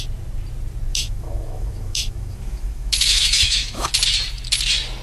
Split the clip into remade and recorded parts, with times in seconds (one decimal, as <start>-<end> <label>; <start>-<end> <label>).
0.0-0.9 recorded; 0.9-3.9 remade; 3.9-5.0 recorded